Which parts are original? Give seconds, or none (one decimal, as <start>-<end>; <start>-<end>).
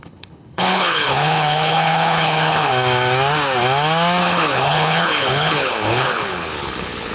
2.7-4.2